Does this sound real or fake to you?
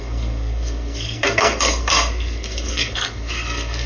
fake